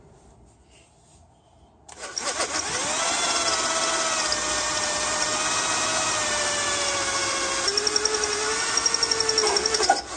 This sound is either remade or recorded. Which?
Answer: recorded